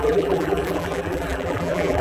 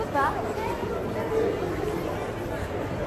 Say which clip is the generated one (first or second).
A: first